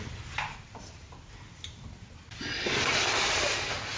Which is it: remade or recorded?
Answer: recorded